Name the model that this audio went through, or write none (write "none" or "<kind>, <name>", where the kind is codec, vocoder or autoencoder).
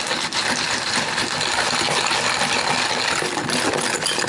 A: none